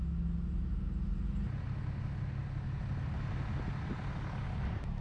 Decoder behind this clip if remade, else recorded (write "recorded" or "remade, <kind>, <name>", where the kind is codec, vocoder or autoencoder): recorded